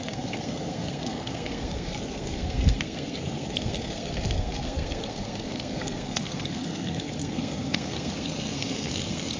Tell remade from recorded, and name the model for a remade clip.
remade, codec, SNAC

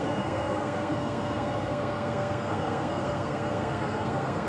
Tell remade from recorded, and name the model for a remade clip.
remade, codec, SNAC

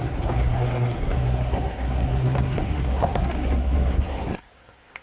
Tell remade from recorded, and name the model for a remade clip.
remade, codec, SNAC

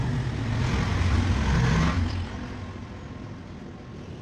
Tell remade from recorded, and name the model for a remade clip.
recorded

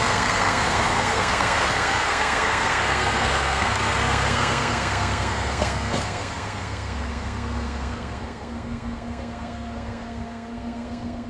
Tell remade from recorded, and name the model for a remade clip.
remade, codec, SNAC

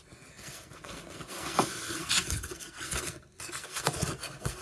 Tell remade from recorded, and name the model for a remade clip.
remade, codec, SNAC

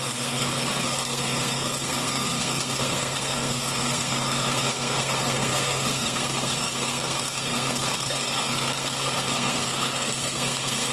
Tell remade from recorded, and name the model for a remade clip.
remade, codec, SNAC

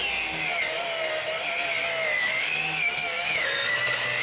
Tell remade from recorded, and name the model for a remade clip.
recorded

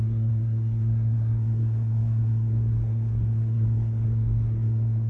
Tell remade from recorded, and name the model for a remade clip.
remade, codec, SNAC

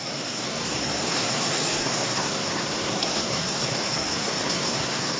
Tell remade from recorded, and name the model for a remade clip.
remade, codec, SNAC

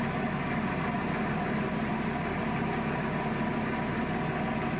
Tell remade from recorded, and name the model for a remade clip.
recorded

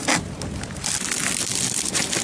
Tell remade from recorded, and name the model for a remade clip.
recorded